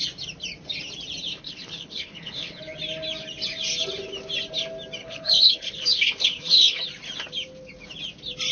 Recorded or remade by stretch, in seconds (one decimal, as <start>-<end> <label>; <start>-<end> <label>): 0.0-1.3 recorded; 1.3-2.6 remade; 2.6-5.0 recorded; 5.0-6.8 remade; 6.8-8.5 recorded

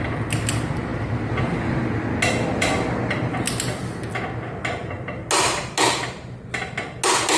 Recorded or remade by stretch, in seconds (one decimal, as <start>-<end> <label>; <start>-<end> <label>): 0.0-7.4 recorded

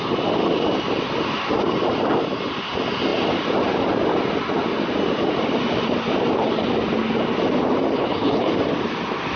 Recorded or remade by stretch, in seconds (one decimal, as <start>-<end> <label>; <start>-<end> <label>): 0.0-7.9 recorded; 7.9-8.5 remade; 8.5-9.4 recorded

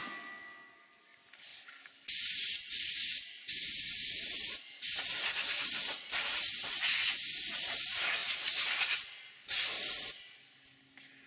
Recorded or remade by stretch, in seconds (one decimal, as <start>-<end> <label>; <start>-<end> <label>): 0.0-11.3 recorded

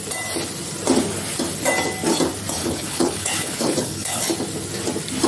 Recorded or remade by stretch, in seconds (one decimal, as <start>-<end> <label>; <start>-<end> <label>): 0.0-2.6 recorded; 2.6-4.2 remade; 4.2-5.3 recorded

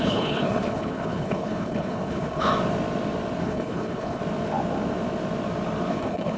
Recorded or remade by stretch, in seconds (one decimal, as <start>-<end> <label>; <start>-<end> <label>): 0.0-2.5 remade; 2.5-3.4 recorded; 3.4-4.2 remade; 4.2-5.9 recorded; 5.9-6.4 remade

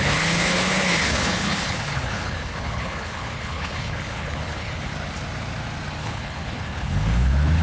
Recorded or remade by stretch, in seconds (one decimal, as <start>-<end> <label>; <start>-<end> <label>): 0.0-4.9 remade; 4.9-6.0 recorded; 6.0-7.6 remade

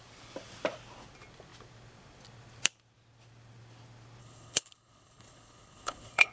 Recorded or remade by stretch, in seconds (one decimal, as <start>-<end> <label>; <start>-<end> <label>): 0.0-4.2 recorded; 4.2-6.3 remade